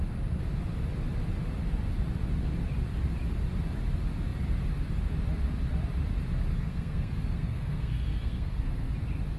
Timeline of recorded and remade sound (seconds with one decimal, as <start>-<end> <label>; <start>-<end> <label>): 0.0-6.5 recorded; 6.5-8.9 remade; 8.9-9.4 recorded